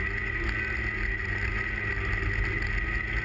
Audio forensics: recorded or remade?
recorded